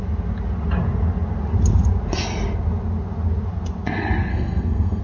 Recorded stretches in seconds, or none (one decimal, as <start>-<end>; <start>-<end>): 0.0-4.3